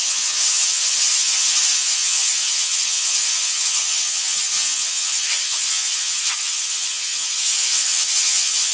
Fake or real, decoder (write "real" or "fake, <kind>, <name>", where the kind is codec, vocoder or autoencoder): fake, vocoder, HiFi-GAN